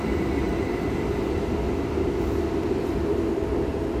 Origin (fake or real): real